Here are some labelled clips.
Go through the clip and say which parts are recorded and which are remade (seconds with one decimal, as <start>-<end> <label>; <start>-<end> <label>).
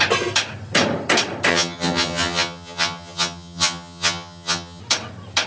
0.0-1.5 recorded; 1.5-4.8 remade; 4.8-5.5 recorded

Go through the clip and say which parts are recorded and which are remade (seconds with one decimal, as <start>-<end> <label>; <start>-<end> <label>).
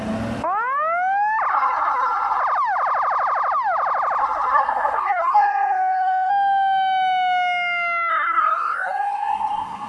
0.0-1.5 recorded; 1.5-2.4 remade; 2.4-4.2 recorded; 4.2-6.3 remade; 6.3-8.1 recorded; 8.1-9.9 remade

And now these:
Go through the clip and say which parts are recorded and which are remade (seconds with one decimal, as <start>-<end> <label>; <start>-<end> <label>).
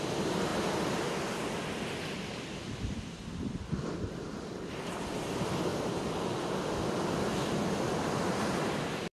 0.0-5.7 remade; 5.7-8.2 recorded; 8.2-9.2 remade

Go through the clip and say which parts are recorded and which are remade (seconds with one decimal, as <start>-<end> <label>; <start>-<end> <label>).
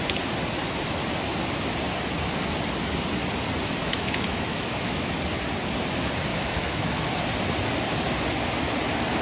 0.0-3.8 recorded; 3.8-5.2 remade; 5.2-6.3 recorded; 6.3-7.2 remade; 7.2-9.2 recorded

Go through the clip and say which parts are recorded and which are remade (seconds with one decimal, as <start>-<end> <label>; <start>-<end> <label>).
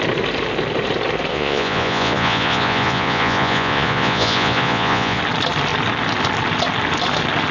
0.0-1.3 recorded; 1.3-5.2 remade; 5.2-7.5 recorded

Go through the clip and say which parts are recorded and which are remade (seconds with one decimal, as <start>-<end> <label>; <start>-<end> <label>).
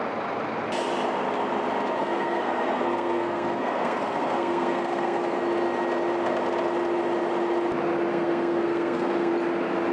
0.0-2.0 recorded; 2.0-5.4 remade; 5.4-8.1 recorded; 8.1-9.3 remade; 9.3-9.9 recorded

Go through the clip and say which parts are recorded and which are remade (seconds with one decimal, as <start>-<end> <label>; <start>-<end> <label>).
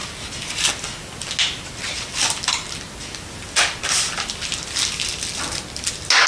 0.0-6.3 recorded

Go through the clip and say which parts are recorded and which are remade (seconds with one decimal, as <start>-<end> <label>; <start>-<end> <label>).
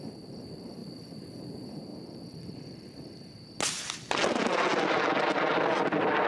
0.0-0.8 recorded; 0.8-1.4 remade; 1.4-1.9 recorded; 1.9-3.0 remade; 3.0-4.7 recorded; 4.7-5.5 remade; 5.5-6.3 recorded